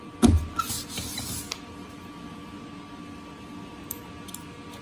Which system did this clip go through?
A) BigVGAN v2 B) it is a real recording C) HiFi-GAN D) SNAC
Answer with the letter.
B